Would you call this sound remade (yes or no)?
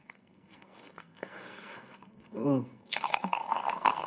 yes